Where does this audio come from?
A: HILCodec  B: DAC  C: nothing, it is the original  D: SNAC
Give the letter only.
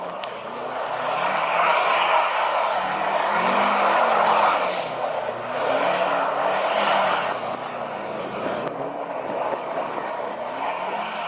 B